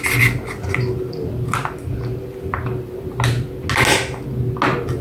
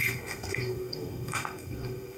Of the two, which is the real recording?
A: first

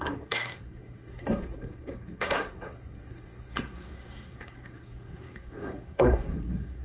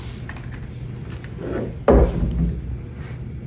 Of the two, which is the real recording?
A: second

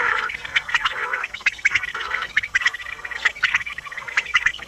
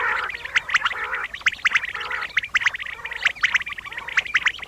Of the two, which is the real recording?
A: second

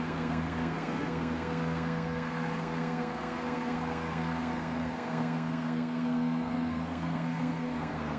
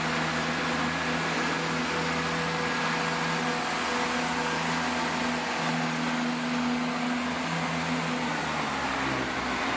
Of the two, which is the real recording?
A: second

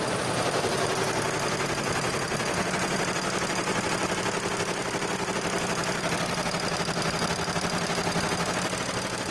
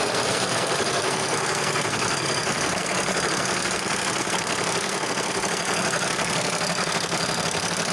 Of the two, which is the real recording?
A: first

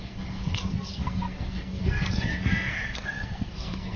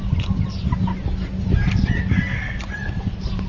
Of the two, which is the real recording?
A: second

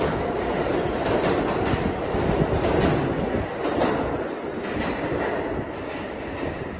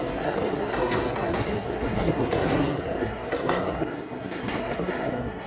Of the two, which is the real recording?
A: first